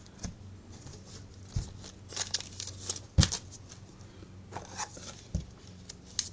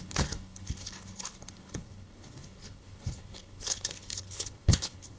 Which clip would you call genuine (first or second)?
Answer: first